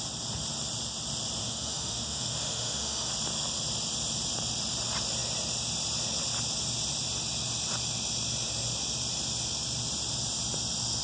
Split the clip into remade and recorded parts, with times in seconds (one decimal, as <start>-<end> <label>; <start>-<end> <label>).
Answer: 0.0-1.4 recorded; 1.4-3.1 remade; 3.1-11.0 recorded